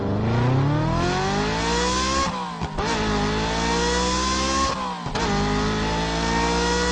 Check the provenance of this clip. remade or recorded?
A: recorded